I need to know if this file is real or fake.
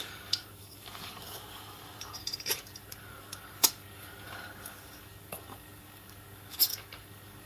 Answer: fake